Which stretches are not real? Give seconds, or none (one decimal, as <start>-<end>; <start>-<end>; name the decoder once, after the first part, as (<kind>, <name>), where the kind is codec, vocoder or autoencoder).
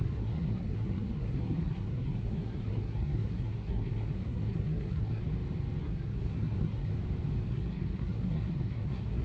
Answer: 0.0-5.2 (codec, SNAC); 5.8-6.9; 7.5-9.2